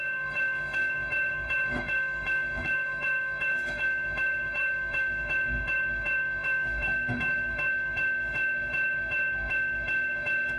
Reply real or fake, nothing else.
fake